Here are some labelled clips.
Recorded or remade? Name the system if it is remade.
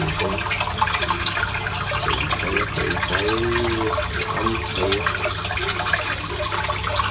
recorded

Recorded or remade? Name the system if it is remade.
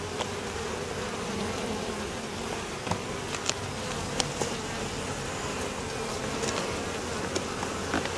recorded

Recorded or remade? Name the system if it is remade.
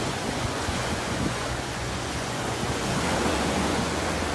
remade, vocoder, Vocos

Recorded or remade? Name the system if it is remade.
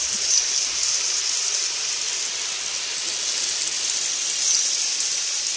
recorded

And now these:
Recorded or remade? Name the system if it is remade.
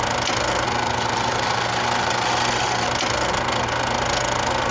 recorded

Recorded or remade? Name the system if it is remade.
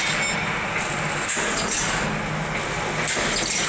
recorded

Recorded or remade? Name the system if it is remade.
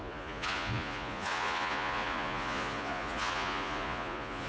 remade, vocoder, Vocos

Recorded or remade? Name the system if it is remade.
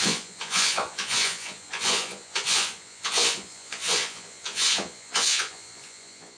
remade, vocoder, Vocos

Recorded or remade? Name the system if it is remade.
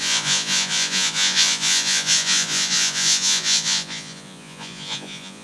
remade, vocoder, Vocos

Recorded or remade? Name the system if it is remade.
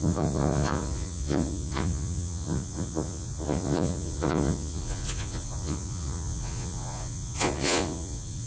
remade, vocoder, Vocos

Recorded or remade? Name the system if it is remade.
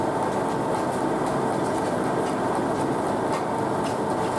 recorded